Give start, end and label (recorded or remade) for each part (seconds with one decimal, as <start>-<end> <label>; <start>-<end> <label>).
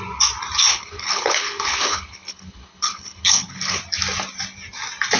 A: 0.0-0.7 recorded; 0.7-3.8 remade; 3.8-5.2 recorded